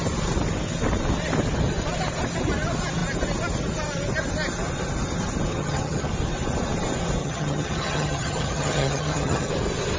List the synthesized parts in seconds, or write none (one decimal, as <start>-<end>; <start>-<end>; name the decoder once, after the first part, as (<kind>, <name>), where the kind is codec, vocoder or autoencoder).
5.5-6.1 (vocoder, HiFi-GAN); 7.2-9.5